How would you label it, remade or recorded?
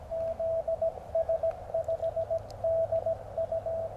recorded